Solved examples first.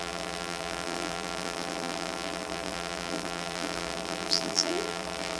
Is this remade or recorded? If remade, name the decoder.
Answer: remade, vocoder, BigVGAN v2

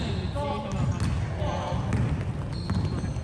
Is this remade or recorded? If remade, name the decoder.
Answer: recorded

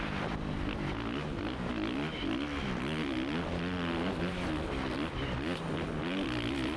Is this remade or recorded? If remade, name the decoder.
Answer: recorded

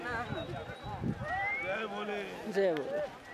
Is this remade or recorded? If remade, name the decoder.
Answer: recorded